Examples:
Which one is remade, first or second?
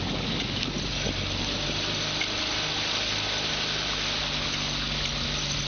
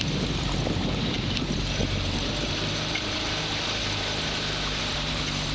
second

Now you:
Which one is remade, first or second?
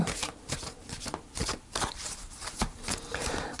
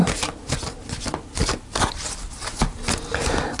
first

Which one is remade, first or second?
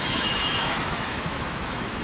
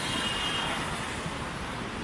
first